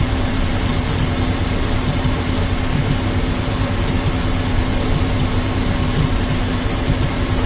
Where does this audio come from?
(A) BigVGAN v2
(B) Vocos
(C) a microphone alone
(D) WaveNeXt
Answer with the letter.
A